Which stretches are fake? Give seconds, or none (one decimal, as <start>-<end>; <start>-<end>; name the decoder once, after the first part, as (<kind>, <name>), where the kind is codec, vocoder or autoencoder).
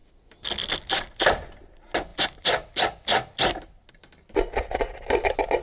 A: none